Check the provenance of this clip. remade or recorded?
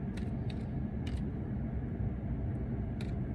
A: recorded